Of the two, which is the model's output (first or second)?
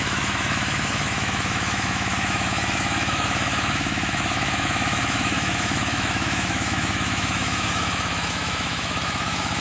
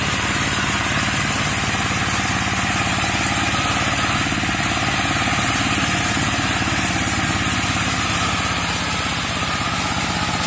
first